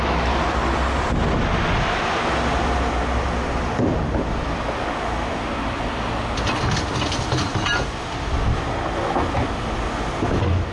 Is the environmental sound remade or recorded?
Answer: recorded